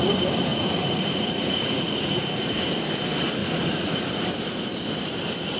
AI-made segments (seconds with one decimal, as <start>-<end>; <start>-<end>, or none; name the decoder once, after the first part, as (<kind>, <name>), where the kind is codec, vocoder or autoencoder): 0.5-2.6 (vocoder, Vocos); 3.4-4.0